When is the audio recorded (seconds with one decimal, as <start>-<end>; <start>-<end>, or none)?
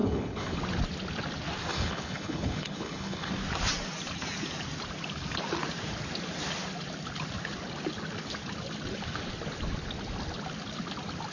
0.6-1.7; 3.3-11.3